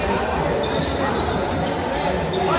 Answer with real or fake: real